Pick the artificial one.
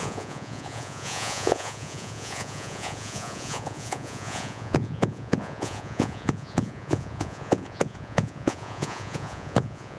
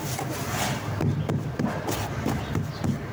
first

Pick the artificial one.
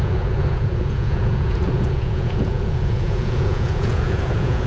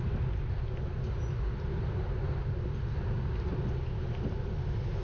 first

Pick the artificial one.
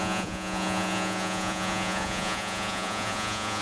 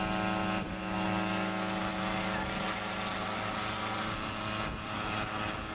first